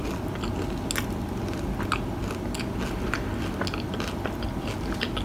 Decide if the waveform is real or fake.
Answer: real